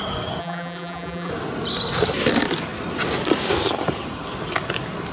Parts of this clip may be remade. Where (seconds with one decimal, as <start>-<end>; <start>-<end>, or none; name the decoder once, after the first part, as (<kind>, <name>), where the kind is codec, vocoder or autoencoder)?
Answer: 0.4-1.3 (vocoder, BigVGAN v2)